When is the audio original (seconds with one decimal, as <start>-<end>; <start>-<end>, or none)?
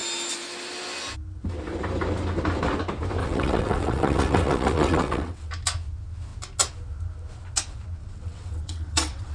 0.0-3.2; 5.5-8.0